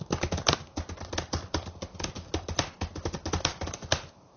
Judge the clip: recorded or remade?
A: recorded